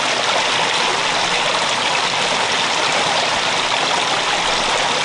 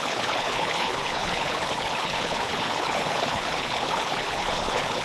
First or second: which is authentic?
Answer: first